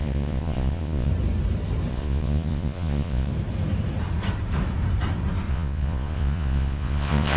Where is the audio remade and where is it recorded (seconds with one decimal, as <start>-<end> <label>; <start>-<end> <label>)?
0.0-1.1 remade; 1.1-1.9 recorded; 1.9-3.3 remade; 3.3-5.5 recorded; 5.5-7.4 remade